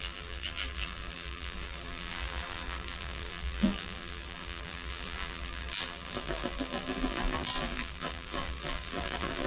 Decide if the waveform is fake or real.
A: fake